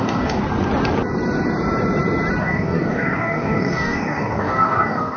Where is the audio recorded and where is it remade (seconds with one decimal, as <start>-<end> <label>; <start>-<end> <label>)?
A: 0.0-0.4 remade; 0.4-2.4 recorded; 2.4-5.2 remade